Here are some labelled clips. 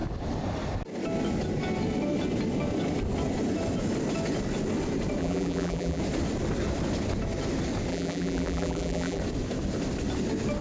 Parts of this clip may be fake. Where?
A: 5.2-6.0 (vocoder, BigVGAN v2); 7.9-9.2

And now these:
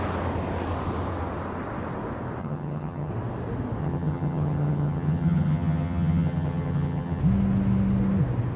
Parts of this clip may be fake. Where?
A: 2.4-3.1 (vocoder, HiFi-GAN); 3.8-7.2

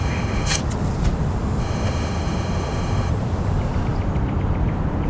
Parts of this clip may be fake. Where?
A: 0.0-0.6 (autoencoder, DAC-VAE); 1.6-3.1

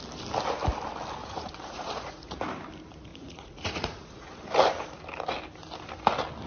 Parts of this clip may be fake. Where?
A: 1.2-2.4 (vocoder, Vocos); 3.1-4.4

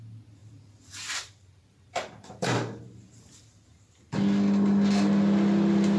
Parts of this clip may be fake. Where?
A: 0.4-4.0 (vocoder, BigVGAN v2)

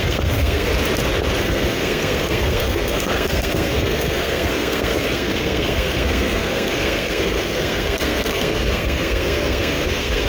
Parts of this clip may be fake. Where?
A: 0.0-0.7 (codec, SNAC); 1.4-10.3